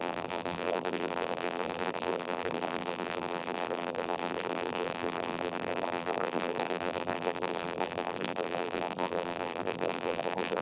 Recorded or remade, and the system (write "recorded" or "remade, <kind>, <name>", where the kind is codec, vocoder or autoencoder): remade, vocoder, BigVGAN v2